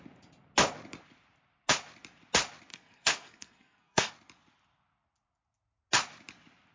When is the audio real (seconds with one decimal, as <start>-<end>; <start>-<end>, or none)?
0.0-2.7; 4.1-6.7